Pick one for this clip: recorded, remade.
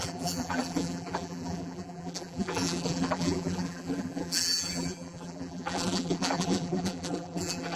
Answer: remade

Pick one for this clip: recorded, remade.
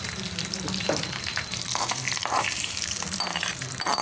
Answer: remade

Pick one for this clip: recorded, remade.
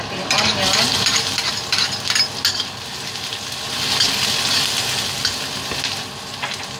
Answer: recorded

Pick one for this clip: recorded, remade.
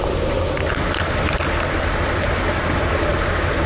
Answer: recorded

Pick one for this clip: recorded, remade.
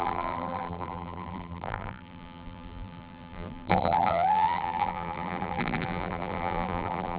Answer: remade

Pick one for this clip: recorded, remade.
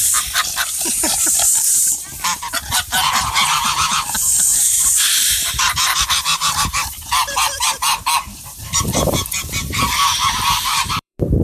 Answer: remade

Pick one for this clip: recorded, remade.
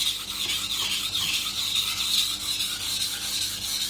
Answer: recorded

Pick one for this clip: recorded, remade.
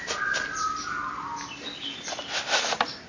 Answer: recorded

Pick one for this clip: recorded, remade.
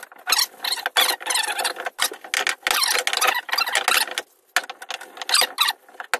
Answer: recorded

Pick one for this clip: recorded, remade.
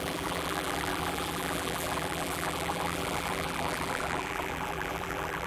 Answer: remade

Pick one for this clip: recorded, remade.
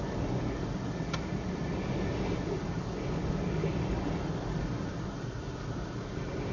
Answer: recorded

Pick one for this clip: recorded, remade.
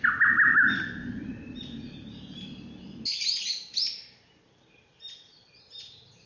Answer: recorded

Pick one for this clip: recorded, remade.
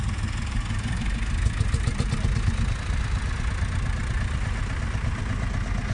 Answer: recorded